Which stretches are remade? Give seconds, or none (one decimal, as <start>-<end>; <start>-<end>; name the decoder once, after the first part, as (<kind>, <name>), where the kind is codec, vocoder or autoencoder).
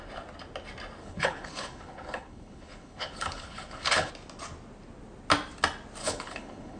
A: 1.0-4.1 (codec, HILCodec); 6.0-6.8